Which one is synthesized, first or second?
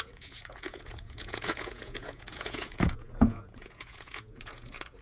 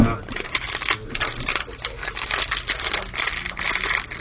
first